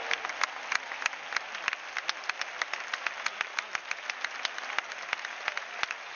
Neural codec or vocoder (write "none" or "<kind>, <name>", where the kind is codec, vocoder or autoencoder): none